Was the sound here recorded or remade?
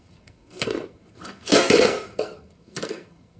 remade